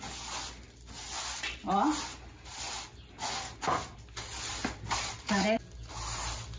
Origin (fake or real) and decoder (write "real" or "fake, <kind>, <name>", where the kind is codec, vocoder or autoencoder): real